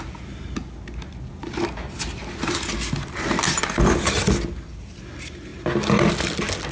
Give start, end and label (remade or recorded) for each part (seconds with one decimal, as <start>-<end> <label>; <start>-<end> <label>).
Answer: 0.0-6.7 recorded